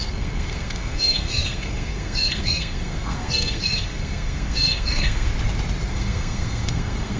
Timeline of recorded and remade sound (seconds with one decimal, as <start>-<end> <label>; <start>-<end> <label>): 0.0-5.3 remade; 5.3-5.9 recorded; 5.9-7.2 remade